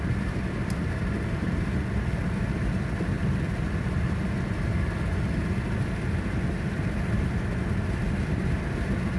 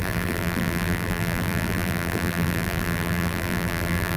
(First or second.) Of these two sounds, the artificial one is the second